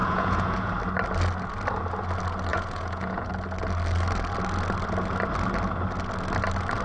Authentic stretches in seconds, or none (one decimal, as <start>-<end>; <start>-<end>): 0.7-2.5; 3.3-6.8